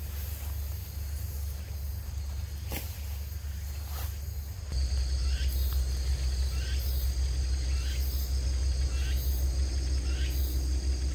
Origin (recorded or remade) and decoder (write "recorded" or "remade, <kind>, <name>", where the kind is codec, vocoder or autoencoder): recorded